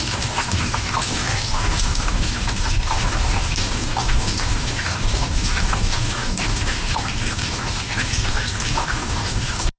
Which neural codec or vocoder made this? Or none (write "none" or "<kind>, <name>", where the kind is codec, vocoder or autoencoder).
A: codec, DAC